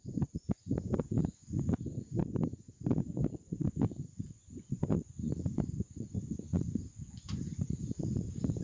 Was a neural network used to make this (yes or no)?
yes